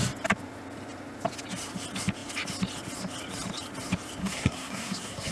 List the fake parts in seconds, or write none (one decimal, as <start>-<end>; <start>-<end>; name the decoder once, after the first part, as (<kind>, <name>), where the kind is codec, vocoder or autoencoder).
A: 4.2-5.3 (codec, SNAC)